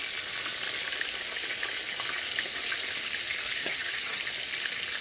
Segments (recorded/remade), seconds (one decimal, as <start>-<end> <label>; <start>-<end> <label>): 0.0-3.6 recorded; 3.6-4.2 remade; 4.2-5.0 recorded